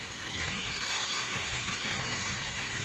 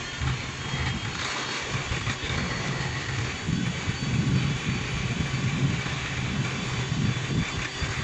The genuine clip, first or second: second